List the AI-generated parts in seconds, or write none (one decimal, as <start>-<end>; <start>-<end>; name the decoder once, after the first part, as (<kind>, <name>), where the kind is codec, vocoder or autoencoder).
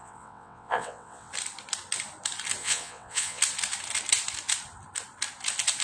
0.0-1.3 (vocoder, WaveNeXt); 2.6-3.4